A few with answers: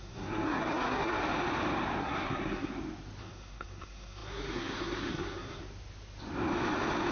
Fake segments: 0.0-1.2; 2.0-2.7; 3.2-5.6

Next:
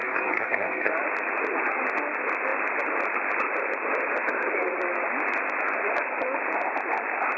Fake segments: 0.0-0.9

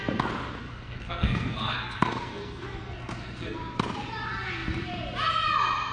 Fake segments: 0.6-3.6

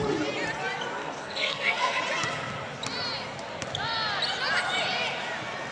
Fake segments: 1.0-2.0

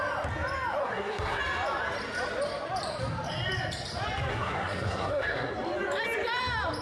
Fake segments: 0.8-1.4; 4.3-5.5

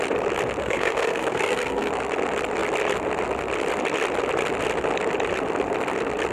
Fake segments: 0.6-1.9